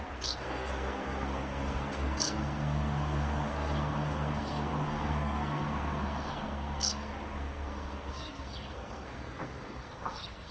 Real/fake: fake